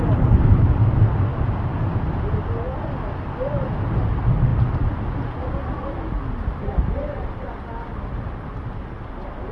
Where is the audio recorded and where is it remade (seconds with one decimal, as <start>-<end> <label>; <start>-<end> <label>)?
0.0-9.5 recorded